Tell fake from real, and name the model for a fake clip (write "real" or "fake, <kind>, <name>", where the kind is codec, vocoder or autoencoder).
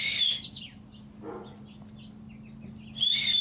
real